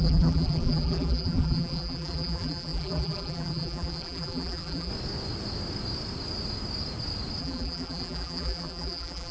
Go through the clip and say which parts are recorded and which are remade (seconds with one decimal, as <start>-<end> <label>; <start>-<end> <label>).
0.0-4.9 remade; 4.9-7.4 recorded; 7.4-9.3 remade